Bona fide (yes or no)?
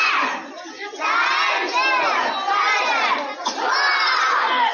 yes